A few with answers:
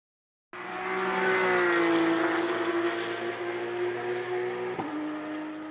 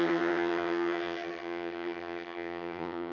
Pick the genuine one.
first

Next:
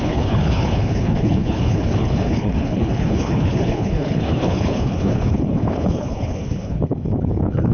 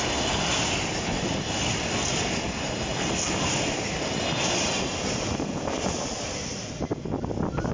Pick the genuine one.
second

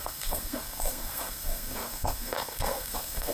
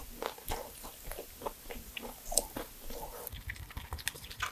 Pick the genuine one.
second